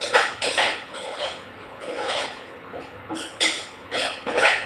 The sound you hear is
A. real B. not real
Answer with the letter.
B